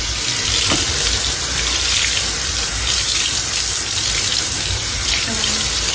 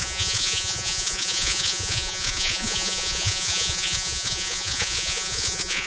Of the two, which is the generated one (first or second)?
second